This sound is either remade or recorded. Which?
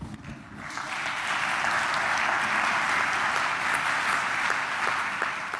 recorded